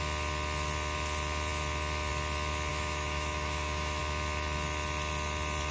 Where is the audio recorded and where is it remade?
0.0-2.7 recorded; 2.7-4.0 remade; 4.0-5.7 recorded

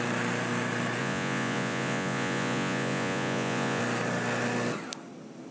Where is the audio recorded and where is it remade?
0.0-1.0 recorded; 1.0-3.8 remade; 3.8-5.5 recorded

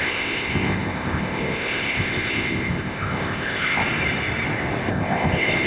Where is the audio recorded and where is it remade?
0.0-3.8 remade; 3.8-4.9 recorded; 4.9-5.7 remade